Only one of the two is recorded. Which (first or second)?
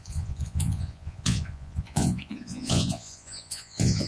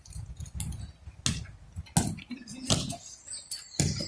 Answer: second